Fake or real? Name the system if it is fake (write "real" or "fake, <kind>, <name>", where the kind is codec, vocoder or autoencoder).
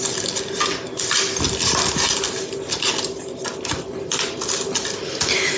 real